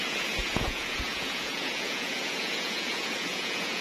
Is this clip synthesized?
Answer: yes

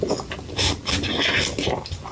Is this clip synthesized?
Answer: no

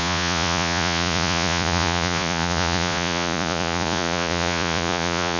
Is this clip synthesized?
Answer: yes